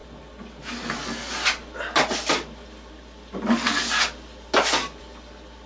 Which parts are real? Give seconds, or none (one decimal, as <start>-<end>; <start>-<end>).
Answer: 0.0-5.7